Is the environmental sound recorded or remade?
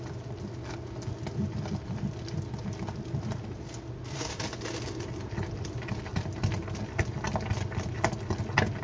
recorded